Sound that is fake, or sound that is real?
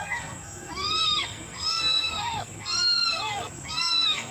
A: fake